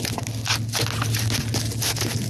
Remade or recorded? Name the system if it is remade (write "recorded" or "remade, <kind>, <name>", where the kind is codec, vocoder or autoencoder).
recorded